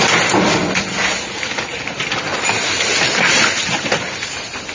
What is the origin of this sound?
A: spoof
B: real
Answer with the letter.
B